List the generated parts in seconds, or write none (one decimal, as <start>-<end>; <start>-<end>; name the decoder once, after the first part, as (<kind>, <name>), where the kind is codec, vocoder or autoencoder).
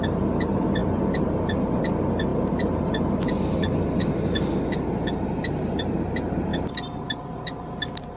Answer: none